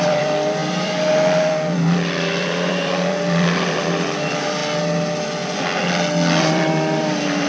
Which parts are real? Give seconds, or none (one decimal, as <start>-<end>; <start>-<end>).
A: 4.6-6.4